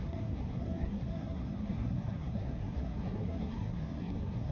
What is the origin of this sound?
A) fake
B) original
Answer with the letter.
A